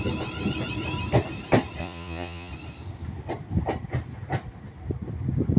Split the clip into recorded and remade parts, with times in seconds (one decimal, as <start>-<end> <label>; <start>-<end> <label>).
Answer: 0.0-1.8 recorded; 1.8-2.5 remade; 2.5-5.6 recorded